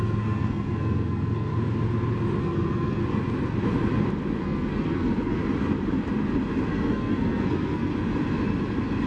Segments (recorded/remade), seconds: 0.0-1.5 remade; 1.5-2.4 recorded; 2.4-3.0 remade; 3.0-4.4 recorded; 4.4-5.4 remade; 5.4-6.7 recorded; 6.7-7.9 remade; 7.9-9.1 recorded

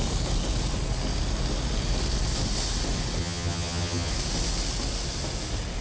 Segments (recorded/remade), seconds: 0.0-3.2 recorded; 3.2-4.1 remade; 4.1-5.8 recorded

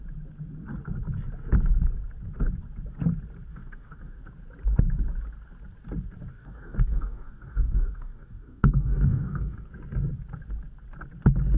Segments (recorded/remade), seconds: 0.0-3.5 recorded; 3.5-4.2 remade; 4.2-6.3 recorded; 6.3-9.7 remade; 9.7-11.6 recorded

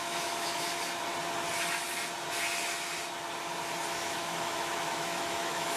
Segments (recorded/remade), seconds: 0.0-0.7 remade; 0.7-3.9 recorded; 3.9-5.8 remade